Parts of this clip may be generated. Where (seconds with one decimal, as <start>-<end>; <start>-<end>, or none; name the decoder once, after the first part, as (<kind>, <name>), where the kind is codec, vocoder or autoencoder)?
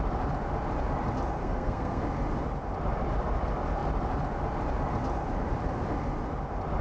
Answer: 1.4-2.0 (codec, SNAC)